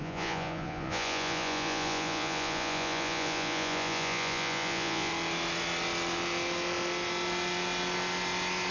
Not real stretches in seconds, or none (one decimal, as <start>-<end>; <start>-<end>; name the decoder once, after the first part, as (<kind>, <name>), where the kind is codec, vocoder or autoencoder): 0.0-5.1 (vocoder, Vocos)